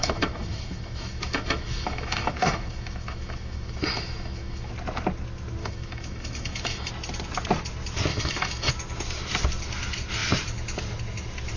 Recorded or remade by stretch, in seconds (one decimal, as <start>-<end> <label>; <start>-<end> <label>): 0.0-4.7 remade; 4.7-5.6 recorded; 5.6-6.9 remade; 6.9-8.1 recorded; 8.1-8.7 remade; 8.7-11.6 recorded